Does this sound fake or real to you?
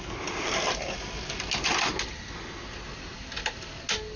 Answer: real